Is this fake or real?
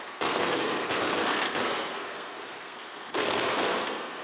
fake